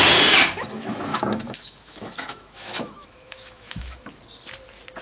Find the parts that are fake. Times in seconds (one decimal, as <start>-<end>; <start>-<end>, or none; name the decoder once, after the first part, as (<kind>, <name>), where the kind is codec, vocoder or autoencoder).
1.1-4.1 (autoencoder, DAC-VAE)